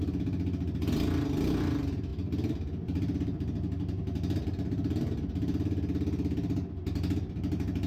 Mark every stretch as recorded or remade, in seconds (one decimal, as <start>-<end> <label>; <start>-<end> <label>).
0.0-7.9 recorded